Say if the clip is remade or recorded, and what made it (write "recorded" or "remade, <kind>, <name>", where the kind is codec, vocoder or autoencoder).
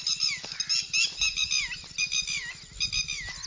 recorded